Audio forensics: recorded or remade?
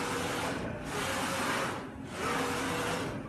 recorded